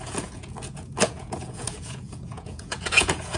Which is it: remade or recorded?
remade